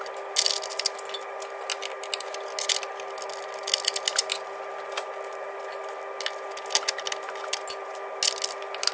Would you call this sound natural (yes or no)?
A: yes